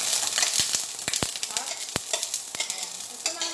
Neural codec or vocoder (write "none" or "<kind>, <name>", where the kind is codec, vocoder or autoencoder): none